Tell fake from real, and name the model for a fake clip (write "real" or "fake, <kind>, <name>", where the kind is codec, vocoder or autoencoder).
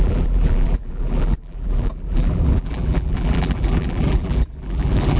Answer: fake, vocoder, BigVGAN v2